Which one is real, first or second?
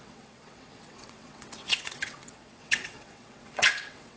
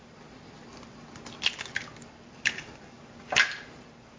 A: second